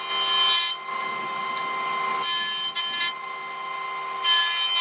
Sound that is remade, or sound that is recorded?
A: recorded